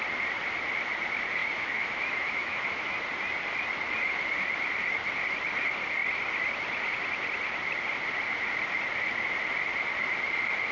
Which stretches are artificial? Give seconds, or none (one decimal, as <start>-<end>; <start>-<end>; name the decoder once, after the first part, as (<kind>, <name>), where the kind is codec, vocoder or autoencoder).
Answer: 1.4-3.0 (autoencoder, DAC-VAE)